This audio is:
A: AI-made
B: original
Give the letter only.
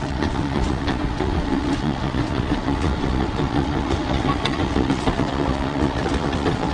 A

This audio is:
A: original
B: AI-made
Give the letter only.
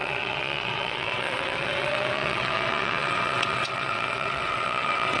B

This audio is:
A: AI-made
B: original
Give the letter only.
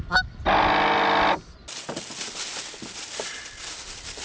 B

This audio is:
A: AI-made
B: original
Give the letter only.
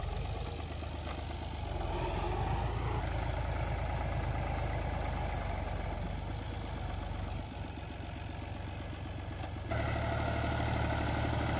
B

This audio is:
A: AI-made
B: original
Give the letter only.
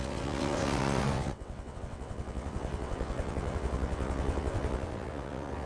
A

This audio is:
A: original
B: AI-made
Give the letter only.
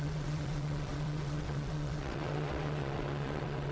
B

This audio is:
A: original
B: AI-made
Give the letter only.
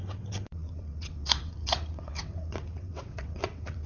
B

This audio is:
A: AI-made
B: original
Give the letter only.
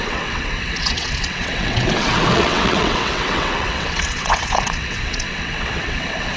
A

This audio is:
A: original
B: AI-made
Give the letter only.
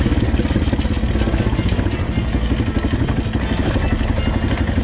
A